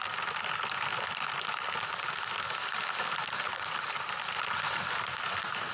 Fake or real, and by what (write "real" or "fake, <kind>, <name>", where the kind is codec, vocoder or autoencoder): real